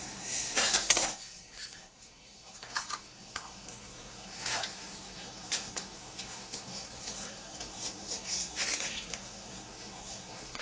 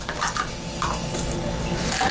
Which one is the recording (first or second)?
second